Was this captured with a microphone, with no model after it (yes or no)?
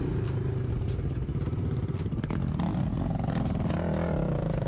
yes